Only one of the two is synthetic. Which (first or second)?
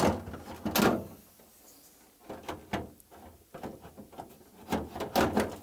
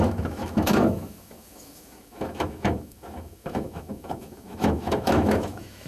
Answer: second